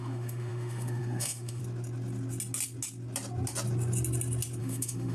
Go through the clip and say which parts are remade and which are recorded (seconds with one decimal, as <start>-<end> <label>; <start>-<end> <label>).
0.0-1.6 remade; 1.6-4.6 recorded; 4.6-5.1 remade